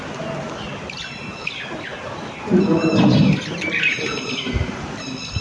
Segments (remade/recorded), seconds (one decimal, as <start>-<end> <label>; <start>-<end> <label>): 0.0-5.4 recorded